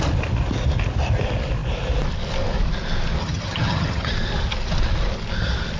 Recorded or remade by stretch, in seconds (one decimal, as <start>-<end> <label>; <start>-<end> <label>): 0.0-3.2 recorded; 3.2-4.1 remade; 4.1-5.8 recorded